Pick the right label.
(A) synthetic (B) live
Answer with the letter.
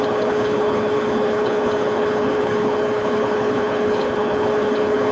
A